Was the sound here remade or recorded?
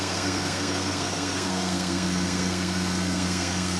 remade